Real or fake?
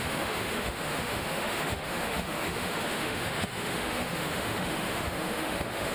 fake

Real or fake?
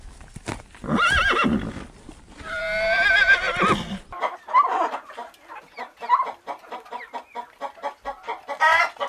real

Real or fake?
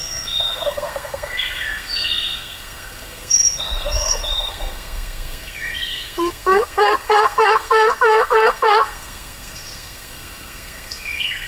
fake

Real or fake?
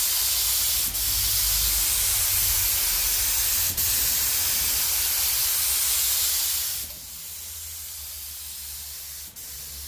real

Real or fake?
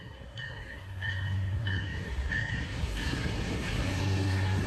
fake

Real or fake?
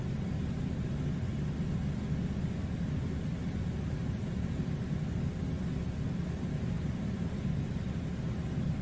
real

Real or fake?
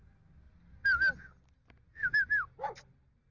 real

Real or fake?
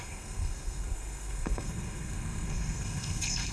fake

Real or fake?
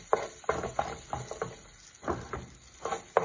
real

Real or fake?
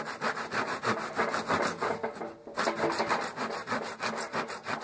real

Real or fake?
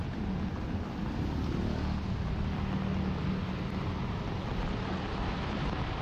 real